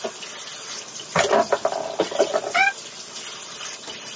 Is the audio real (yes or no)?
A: yes